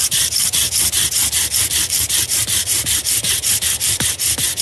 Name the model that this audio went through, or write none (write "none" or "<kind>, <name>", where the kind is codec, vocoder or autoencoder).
none